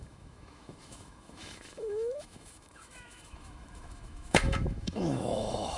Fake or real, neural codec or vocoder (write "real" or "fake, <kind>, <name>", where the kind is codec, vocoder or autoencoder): fake, autoencoder, DAC-VAE